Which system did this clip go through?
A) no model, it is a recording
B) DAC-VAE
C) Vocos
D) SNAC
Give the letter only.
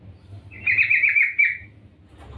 A